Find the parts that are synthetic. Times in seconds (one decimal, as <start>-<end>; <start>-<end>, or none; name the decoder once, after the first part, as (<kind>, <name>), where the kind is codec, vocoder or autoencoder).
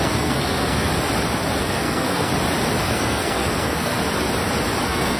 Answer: 0.0-0.9 (codec, SNAC); 1.6-2.3; 2.8-4.0; 4.8-5.2